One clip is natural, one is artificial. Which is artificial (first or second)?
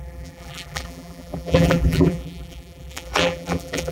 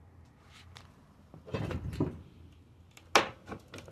first